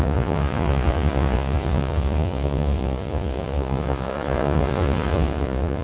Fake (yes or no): yes